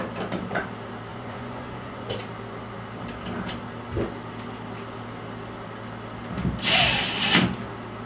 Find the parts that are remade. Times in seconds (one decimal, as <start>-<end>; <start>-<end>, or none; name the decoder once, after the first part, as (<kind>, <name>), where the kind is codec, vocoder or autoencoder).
1.1-2.1 (vocoder, Vocos)